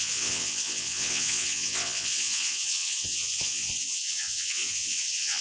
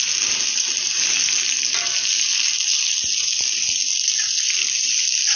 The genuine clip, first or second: second